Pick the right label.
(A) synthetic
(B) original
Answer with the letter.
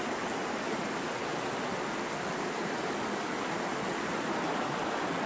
B